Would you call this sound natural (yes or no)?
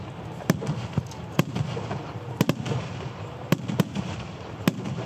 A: yes